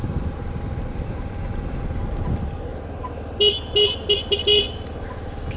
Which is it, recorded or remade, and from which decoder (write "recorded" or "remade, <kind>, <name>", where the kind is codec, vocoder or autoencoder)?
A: recorded